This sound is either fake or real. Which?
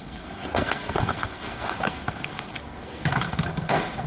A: fake